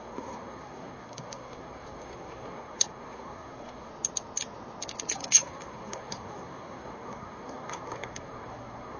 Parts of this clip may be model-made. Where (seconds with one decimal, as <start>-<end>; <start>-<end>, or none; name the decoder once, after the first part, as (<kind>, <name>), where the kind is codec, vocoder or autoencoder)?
0.0-3.9 (codec, SNAC); 5.1-9.0